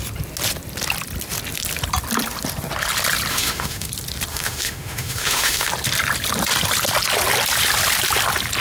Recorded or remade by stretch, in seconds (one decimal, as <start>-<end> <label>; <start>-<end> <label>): 0.0-3.3 recorded; 3.3-3.9 remade; 3.9-4.3 recorded; 4.3-5.7 remade; 5.7-8.6 recorded

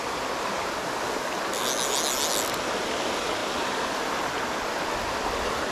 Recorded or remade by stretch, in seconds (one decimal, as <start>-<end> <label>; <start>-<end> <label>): 0.0-5.7 recorded

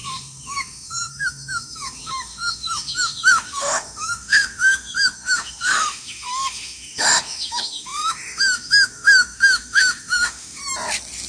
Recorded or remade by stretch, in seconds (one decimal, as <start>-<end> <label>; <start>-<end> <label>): 0.0-10.6 remade; 10.6-11.3 recorded